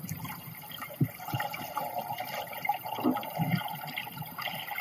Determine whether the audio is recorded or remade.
recorded